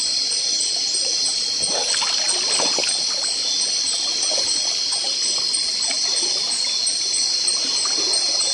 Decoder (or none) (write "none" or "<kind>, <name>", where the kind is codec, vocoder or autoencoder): none